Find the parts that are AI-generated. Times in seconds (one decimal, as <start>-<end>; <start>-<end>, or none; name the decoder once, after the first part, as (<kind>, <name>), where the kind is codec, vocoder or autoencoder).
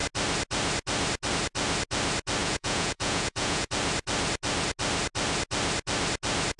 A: 2.4-3.7 (vocoder, Vocos)